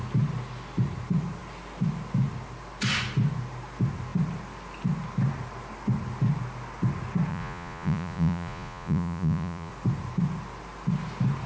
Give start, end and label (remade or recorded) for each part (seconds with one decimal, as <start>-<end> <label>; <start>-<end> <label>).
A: 0.0-7.3 recorded; 7.3-9.7 remade; 9.7-11.5 recorded